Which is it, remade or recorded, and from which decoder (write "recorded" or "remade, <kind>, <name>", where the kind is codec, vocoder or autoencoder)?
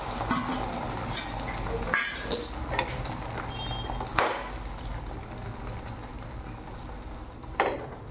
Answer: recorded